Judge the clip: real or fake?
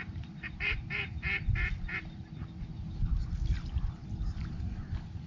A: real